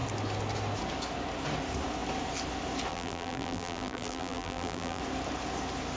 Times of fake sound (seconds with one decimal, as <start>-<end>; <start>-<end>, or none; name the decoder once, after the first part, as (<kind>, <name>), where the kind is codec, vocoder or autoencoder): 2.9-5.0 (vocoder, BigVGAN v2)